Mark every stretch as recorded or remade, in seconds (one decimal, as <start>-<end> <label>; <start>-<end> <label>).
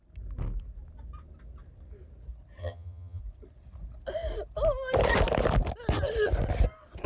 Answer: 0.0-2.6 recorded; 2.6-3.2 remade; 3.2-7.1 recorded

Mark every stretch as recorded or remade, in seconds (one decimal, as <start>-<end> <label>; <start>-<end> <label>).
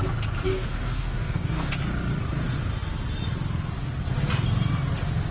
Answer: 0.0-0.5 recorded; 0.5-1.7 remade; 1.7-5.3 recorded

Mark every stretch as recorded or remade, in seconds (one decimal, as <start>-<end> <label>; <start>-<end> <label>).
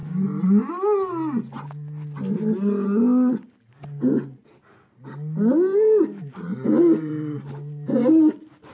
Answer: 0.0-6.5 recorded; 6.5-8.7 remade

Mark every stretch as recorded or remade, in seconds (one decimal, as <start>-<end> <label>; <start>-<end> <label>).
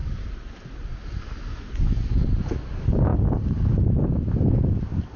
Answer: 0.0-5.2 recorded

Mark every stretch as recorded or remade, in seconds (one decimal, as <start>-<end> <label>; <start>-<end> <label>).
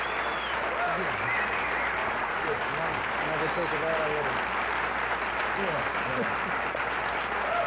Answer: 0.0-2.0 recorded; 2.0-2.7 remade; 2.7-7.7 recorded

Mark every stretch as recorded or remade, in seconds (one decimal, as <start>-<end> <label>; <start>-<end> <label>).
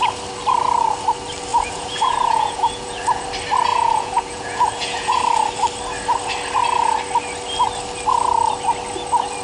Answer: 0.0-1.5 recorded; 1.5-3.2 remade; 3.2-3.7 recorded; 3.7-5.2 remade; 5.2-9.4 recorded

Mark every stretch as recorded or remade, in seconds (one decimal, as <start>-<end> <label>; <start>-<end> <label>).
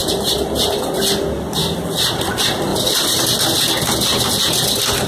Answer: 0.0-1.0 remade; 1.0-2.7 recorded; 2.7-3.4 remade; 3.4-5.1 recorded